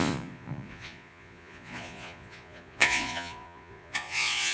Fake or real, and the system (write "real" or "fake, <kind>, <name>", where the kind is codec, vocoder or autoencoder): fake, vocoder, Vocos